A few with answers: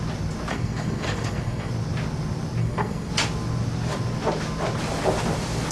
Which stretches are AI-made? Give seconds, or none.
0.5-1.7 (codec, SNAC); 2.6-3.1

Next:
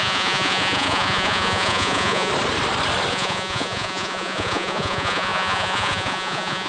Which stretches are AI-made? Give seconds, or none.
0.0-2.3 (vocoder, Vocos); 3.1-6.7